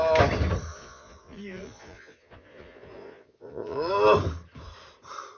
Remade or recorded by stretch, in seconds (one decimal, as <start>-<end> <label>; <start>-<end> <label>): 0.0-0.7 recorded; 0.7-3.9 remade; 3.9-5.4 recorded